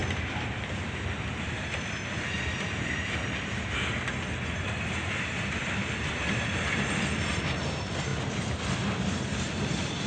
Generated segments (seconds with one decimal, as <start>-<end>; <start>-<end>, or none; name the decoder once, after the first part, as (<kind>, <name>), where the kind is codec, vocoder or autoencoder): 0.0-2.9 (vocoder, BigVGAN v2); 5.0-7.4; 8.1-9.7